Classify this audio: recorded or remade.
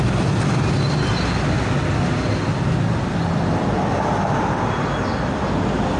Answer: recorded